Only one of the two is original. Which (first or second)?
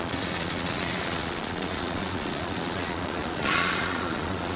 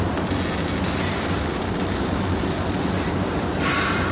second